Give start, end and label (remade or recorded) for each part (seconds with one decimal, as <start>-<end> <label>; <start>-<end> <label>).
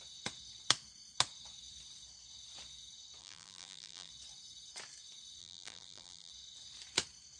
0.0-3.2 recorded; 3.2-4.1 remade; 4.1-5.4 recorded; 5.4-6.3 remade; 6.3-7.4 recorded